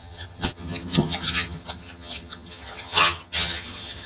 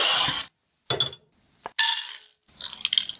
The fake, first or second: first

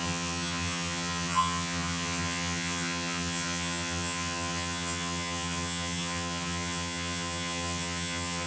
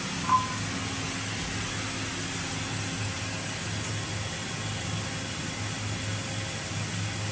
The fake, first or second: first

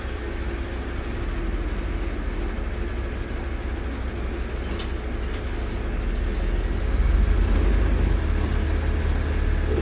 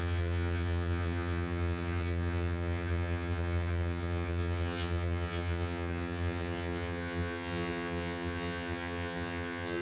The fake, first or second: second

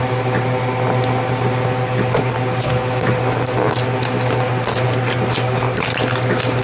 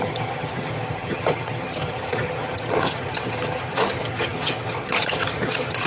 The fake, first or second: second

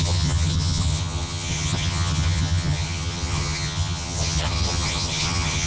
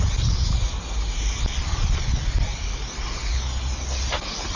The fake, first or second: first